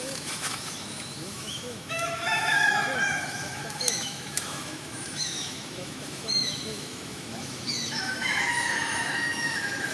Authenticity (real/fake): fake